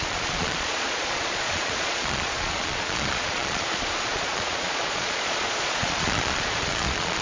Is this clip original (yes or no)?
no